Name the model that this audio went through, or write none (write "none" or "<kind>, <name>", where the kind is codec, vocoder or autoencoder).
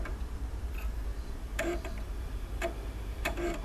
vocoder, BigVGAN v2